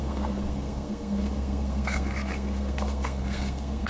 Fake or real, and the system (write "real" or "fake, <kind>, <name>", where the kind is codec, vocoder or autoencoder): fake, codec, SNAC